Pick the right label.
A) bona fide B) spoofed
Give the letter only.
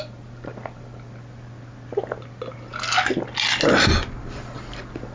A